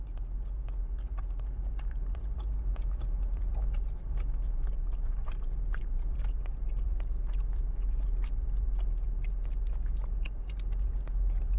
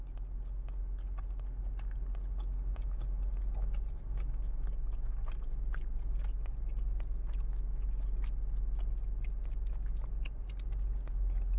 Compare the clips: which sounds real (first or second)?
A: second